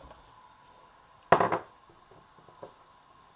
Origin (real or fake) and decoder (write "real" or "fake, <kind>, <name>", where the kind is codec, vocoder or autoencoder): real